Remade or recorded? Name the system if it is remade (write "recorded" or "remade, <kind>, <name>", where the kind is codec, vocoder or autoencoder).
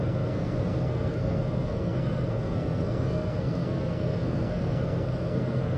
remade, codec, SNAC